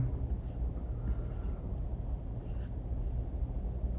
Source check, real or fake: real